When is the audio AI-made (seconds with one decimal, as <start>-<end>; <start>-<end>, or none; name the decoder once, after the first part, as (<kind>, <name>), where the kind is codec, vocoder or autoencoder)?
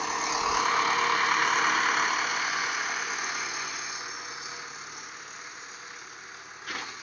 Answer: 2.3-4.3 (vocoder, Vocos)